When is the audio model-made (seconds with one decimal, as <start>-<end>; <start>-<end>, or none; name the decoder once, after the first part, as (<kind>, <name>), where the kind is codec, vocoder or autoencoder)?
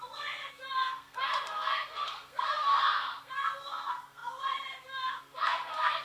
0.0-6.0 (codec, SNAC)